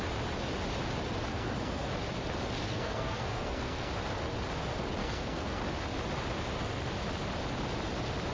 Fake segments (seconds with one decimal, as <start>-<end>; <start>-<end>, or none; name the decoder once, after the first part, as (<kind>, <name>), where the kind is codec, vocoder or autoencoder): 1.3-1.9 (codec, SNAC); 2.7-3.9; 5.0-5.6